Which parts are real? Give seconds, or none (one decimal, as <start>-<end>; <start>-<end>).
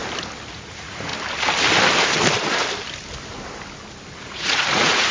0.0-0.5; 1.1-4.2